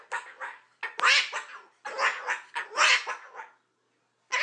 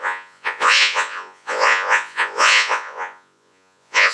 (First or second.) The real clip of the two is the first